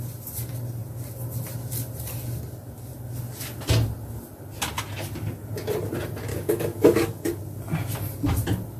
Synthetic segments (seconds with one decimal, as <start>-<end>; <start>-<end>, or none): 6.3-7.4